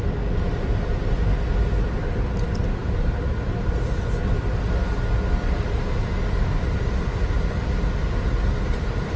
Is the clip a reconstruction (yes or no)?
no